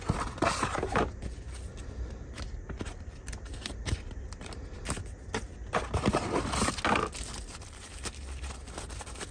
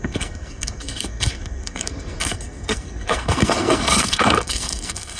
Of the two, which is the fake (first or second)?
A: second